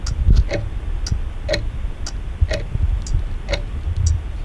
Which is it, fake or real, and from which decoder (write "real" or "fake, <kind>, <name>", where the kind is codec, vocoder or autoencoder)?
real